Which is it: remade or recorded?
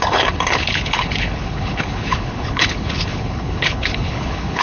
remade